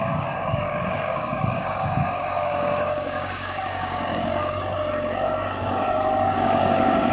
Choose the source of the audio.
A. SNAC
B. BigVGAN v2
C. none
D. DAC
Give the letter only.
D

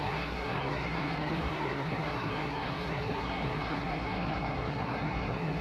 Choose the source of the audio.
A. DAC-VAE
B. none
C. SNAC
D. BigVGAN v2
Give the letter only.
C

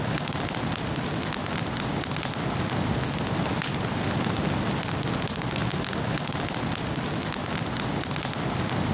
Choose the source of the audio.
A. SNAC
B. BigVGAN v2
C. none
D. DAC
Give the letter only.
C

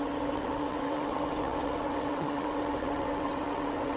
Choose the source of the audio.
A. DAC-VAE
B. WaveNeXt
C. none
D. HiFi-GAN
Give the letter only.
B